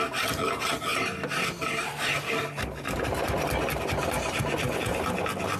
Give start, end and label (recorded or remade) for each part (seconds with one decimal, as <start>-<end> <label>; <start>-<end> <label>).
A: 0.0-0.9 recorded; 0.9-3.0 remade; 3.0-5.6 recorded